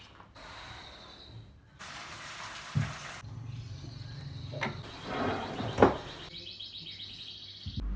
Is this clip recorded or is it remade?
recorded